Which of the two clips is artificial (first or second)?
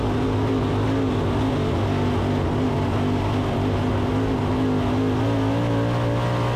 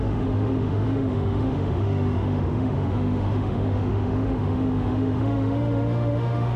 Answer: second